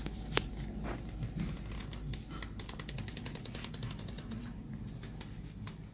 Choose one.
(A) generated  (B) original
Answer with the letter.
B